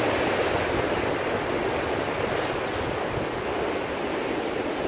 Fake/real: real